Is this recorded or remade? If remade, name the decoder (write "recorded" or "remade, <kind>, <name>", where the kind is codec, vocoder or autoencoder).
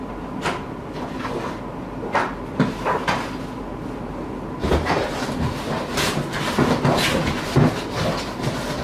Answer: recorded